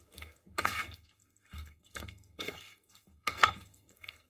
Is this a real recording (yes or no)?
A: no